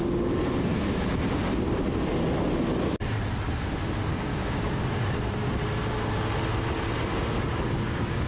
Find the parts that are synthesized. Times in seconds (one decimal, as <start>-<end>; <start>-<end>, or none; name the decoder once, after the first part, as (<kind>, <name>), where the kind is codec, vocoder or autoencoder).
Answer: 4.1-5.6 (codec, DAC); 7.1-8.3